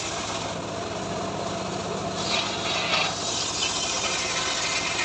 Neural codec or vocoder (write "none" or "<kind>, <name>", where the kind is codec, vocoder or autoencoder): none